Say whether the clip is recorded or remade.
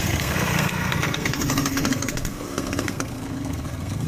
remade